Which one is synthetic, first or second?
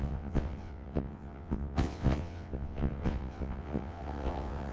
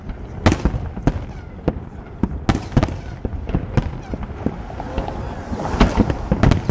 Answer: first